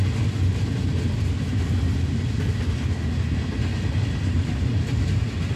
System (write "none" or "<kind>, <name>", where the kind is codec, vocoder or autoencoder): none